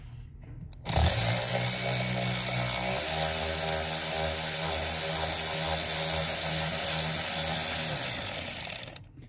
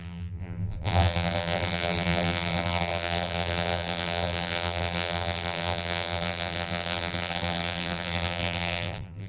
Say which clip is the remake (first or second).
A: second